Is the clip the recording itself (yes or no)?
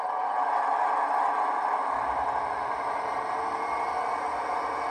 yes